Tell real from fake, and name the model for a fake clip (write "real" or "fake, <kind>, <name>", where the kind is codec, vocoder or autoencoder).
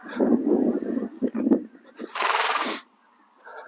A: real